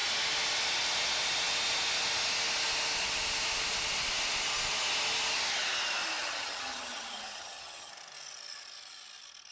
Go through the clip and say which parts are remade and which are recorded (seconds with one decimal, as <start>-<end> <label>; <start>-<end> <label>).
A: 0.0-6.2 recorded; 6.2-7.9 remade; 7.9-9.5 recorded